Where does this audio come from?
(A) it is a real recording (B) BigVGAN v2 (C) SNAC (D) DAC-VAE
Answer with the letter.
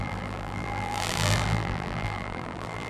B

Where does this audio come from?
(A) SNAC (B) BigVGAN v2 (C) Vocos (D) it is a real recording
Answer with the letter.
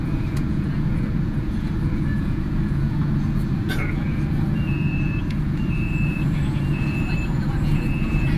C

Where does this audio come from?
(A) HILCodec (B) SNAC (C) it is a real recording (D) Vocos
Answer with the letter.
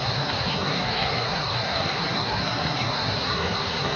B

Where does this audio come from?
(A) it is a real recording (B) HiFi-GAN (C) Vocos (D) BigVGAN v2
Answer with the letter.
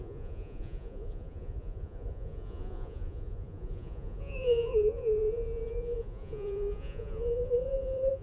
C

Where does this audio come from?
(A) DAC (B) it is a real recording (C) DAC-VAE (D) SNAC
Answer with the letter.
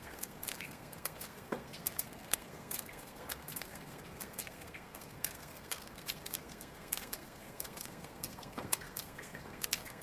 D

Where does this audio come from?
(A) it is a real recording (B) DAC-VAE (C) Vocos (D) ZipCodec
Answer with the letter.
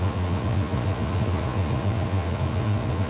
C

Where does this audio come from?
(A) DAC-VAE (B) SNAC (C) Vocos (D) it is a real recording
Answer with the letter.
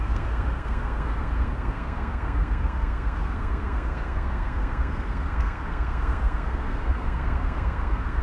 B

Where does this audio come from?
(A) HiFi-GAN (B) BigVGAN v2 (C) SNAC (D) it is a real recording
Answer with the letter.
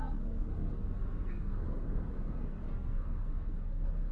C